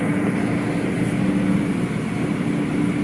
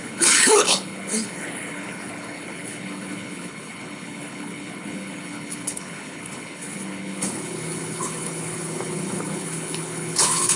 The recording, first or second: first